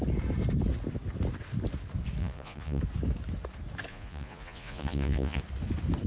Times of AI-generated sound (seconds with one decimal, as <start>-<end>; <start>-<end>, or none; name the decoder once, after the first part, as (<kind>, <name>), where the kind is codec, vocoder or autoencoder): 2.2-2.8 (vocoder, Vocos); 3.9-5.4